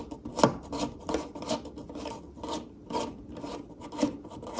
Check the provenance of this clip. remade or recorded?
recorded